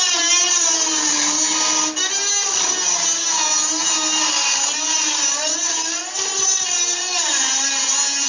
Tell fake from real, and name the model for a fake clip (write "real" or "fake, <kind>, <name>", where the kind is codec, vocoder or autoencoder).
real